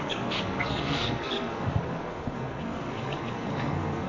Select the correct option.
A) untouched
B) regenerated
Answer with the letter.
B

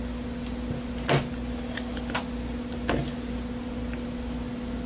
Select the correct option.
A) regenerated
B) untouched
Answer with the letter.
B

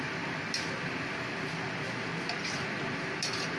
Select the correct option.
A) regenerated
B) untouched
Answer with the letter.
A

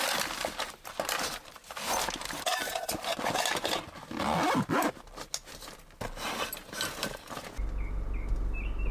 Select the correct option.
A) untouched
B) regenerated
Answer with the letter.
A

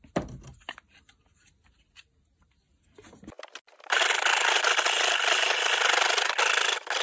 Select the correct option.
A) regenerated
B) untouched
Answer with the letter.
B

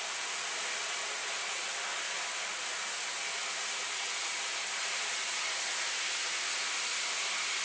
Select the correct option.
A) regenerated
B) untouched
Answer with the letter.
B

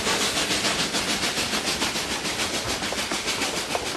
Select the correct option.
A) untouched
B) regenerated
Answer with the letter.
A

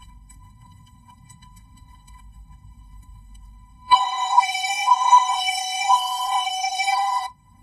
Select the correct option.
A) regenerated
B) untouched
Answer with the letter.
A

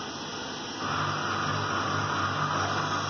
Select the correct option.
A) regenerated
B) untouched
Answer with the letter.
B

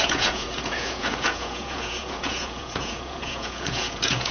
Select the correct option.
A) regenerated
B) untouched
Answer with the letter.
A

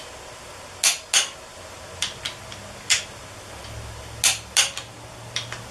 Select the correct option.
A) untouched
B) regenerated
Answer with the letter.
A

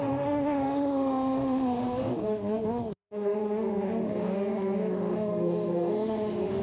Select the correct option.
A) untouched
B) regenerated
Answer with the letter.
B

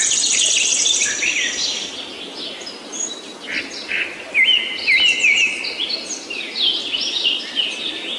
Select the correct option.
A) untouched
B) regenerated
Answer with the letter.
A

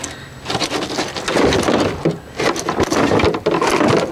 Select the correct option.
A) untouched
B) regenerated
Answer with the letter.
A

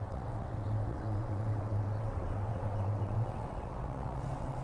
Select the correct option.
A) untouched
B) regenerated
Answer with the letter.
B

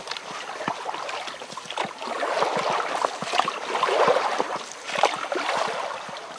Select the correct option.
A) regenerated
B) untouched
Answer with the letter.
B